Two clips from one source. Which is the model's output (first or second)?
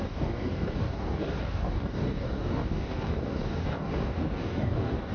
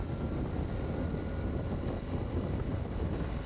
first